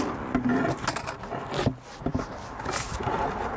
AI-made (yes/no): no